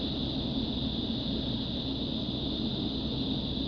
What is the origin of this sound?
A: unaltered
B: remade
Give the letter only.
A